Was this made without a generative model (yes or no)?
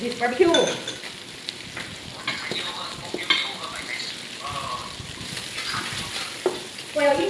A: yes